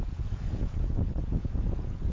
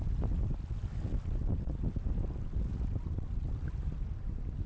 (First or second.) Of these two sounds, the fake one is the first